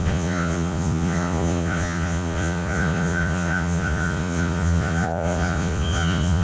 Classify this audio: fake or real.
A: fake